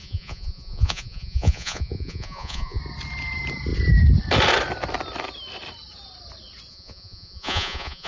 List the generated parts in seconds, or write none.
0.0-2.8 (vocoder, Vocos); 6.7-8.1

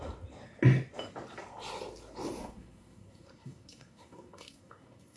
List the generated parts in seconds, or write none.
2.4-5.2 (codec, SNAC)

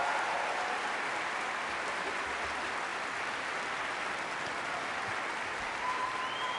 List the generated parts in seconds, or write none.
none

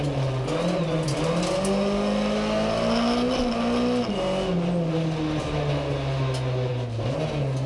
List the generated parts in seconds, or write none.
none

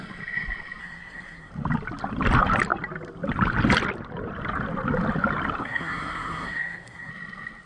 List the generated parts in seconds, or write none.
0.8-1.5 (codec, SNAC); 5.6-7.1

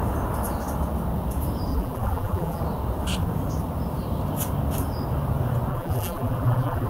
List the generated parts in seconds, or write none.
1.7-2.6 (vocoder, BigVGAN v2); 5.7-6.9

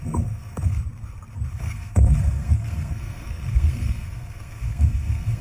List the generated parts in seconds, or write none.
0.0-0.8 (codec, SNAC); 1.5-5.4